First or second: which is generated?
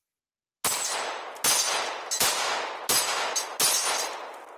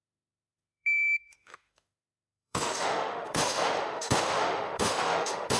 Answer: second